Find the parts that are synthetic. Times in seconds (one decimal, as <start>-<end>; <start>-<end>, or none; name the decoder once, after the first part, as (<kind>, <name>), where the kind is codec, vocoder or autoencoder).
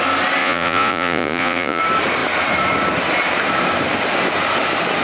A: 0.4-1.8 (vocoder, Vocos)